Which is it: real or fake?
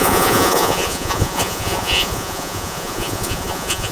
fake